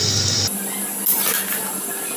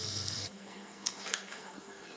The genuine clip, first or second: first